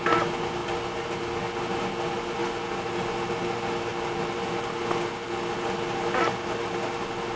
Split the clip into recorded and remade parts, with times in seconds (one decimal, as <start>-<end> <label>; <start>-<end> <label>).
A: 0.0-7.4 recorded